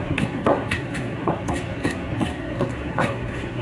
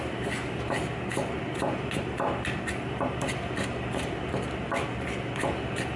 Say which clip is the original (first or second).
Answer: second